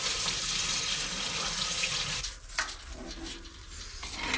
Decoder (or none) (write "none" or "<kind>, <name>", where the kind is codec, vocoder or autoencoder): none